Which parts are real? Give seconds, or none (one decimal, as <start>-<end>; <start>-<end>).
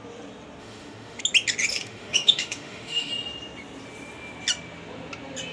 0.0-0.6; 1.2-1.7; 3.1-5.5